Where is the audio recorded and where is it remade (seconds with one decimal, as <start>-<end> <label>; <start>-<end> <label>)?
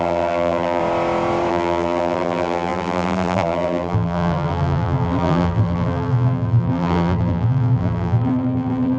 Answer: 0.0-0.8 remade; 0.8-1.5 recorded; 1.5-9.0 remade